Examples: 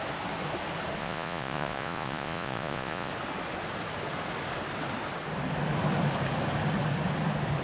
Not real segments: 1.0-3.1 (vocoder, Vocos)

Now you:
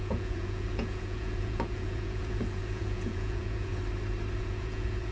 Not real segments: 0.0-3.7 (vocoder, Vocos); 4.4-5.1

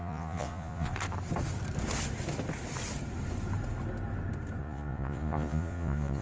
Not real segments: 0.0-0.9 (vocoder, Vocos); 4.6-6.2

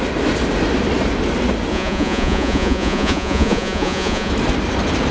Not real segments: 1.7-4.3 (vocoder, Vocos)

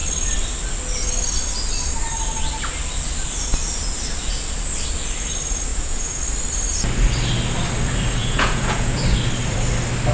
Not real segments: 5.7-6.2 (vocoder, Vocos); 8.2-9.0

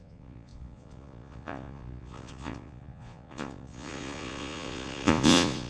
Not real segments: 0.0-5.7 (vocoder, Vocos)

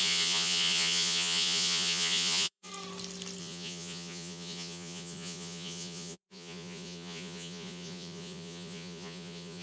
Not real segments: 0.0-2.7 (vocoder, Vocos); 3.4-9.6